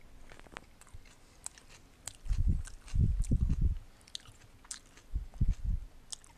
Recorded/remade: recorded